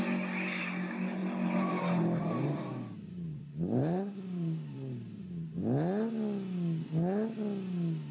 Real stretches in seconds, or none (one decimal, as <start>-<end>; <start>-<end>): 0.0-1.2; 5.2-8.1